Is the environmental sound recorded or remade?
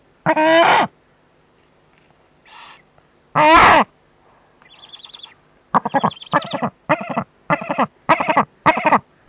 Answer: recorded